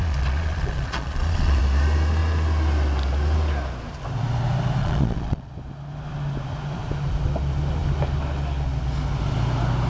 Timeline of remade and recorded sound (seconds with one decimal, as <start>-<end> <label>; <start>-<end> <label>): 0.0-1.6 remade; 1.6-4.8 recorded; 4.8-5.5 remade; 5.5-9.9 recorded